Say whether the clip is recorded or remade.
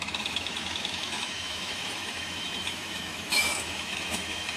remade